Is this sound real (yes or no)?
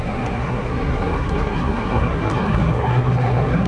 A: no